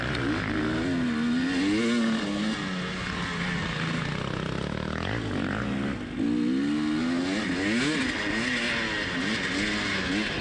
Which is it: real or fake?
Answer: real